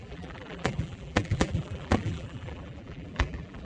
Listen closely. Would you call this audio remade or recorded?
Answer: remade